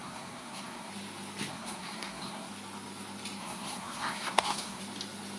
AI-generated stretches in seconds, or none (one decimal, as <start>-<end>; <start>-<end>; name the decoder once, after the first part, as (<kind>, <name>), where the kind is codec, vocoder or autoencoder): 0.0-0.9 (codec, SNAC); 1.5-2.5; 3.4-4.8